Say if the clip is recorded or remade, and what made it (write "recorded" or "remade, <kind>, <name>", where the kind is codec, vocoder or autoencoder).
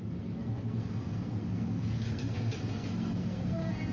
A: remade, codec, SNAC